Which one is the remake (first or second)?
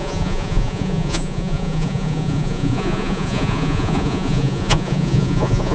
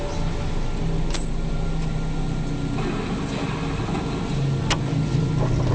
first